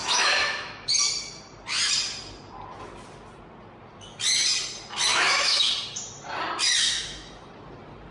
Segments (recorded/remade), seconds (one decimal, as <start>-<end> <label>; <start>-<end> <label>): 0.0-0.9 remade; 0.9-5.1 recorded; 5.1-5.7 remade; 5.7-6.8 recorded; 6.8-7.3 remade; 7.3-8.1 recorded